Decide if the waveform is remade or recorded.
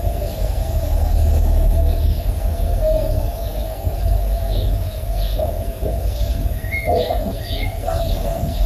remade